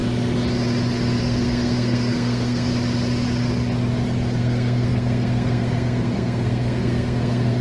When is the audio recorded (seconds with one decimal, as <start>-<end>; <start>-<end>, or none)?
0.0-1.2; 2.7-4.4

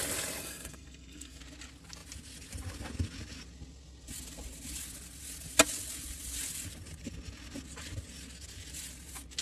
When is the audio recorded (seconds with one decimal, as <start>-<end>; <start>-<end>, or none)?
0.0-0.4; 1.4-9.4

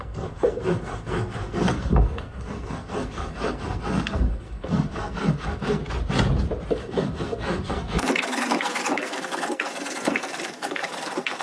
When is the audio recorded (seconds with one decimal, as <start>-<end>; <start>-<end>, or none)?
5.8-6.8

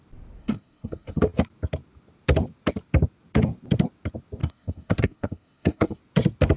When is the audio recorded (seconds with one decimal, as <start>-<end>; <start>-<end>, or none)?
0.0-0.4; 1.2-4.4; 6.0-6.6

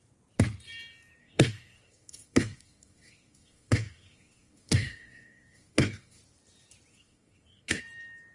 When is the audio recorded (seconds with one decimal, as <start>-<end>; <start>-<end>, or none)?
0.0-1.2; 6.2-6.9; 7.8-8.3

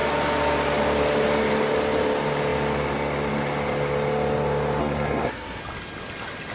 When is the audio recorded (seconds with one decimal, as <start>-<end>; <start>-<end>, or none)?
0.0-4.8; 5.6-6.5

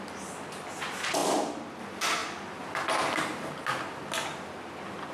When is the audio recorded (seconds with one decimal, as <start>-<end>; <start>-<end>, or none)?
0.0-5.1

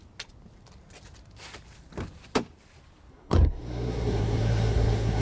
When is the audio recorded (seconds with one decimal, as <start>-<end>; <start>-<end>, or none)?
0.0-3.1